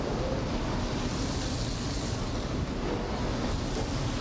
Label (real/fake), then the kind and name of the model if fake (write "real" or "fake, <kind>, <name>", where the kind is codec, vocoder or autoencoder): real